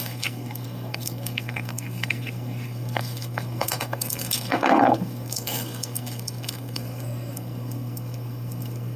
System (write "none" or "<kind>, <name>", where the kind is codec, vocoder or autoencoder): codec, SNAC